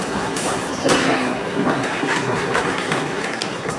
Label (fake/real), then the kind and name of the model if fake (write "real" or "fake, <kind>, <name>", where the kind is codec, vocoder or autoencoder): fake, codec, SNAC